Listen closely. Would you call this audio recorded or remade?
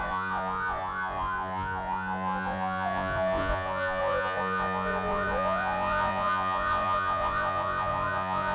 remade